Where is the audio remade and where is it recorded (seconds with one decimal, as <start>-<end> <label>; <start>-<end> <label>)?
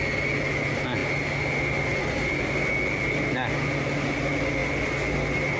0.0-5.6 recorded